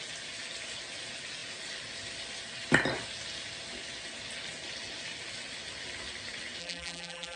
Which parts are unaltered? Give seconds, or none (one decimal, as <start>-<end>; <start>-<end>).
0.0-6.6